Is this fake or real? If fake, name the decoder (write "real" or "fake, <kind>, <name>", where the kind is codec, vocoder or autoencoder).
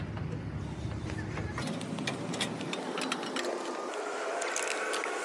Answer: real